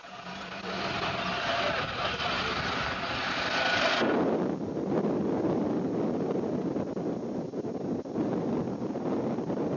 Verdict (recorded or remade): recorded